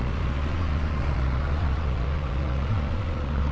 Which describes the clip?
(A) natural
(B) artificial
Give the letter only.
B